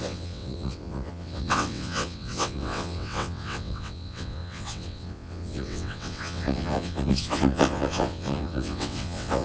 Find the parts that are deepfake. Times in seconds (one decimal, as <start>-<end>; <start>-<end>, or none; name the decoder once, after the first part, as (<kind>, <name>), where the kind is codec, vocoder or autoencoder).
0.0-9.4 (vocoder, WaveNeXt)